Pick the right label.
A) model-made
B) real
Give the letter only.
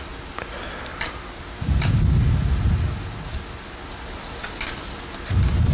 B